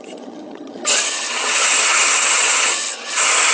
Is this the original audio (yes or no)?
no